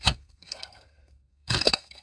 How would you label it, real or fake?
fake